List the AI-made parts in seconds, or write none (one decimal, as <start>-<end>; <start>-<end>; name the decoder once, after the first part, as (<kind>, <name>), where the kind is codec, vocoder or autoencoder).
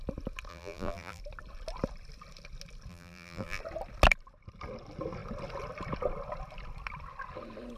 0.5-1.2 (vocoder, BigVGAN v2); 2.9-3.6